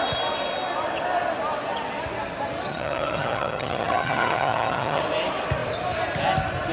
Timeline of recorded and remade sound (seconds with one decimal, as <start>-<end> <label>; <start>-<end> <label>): 0.0-2.7 recorded; 2.7-5.0 remade; 5.0-6.7 recorded